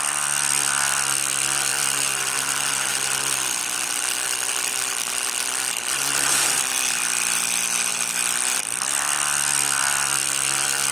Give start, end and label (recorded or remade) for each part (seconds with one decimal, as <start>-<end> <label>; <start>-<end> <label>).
0.0-10.9 recorded